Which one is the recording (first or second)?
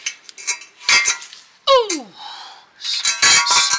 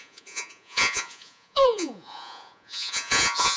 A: first